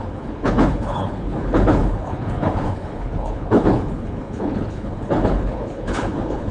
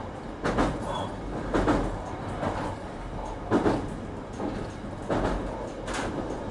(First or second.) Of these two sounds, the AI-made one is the first